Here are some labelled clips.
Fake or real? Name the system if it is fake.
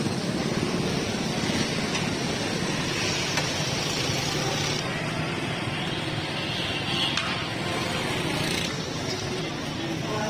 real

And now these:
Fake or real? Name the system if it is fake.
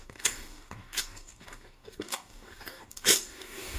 fake, codec, DAC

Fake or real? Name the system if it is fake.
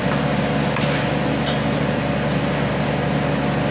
real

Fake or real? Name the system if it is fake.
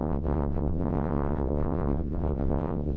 fake, vocoder, WaveNeXt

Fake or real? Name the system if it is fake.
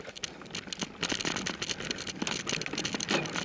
real